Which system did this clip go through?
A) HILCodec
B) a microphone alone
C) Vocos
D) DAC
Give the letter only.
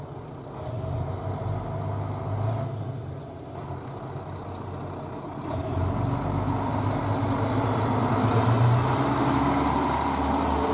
B